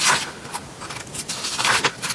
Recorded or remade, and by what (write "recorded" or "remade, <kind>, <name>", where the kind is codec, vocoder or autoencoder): recorded